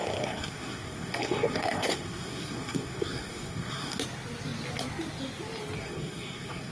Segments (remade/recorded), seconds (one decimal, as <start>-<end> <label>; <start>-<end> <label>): 0.0-4.0 remade; 4.0-5.8 recorded; 5.8-6.7 remade